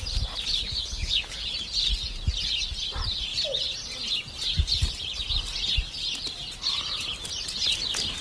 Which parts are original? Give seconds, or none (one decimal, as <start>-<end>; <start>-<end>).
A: 0.0-0.5; 1.5-8.2